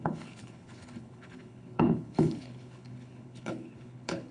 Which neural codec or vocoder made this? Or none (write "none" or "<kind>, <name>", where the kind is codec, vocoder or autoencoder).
codec, HILCodec